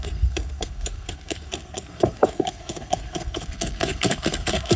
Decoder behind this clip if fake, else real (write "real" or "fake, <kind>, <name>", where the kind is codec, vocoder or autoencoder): fake, codec, SNAC